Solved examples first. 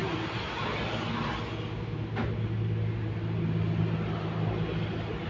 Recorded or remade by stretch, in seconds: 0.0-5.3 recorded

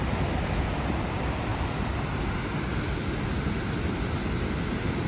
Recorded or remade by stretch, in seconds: 0.0-1.5 recorded; 1.5-2.2 remade; 2.2-5.1 recorded

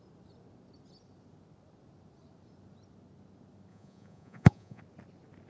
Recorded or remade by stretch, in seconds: 0.0-3.7 recorded; 3.7-4.8 remade; 4.8-5.5 recorded

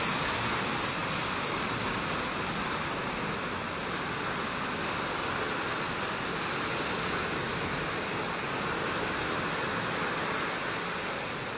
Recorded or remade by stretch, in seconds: 0.0-11.6 recorded